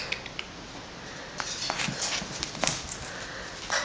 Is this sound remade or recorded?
recorded